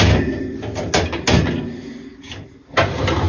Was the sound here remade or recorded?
recorded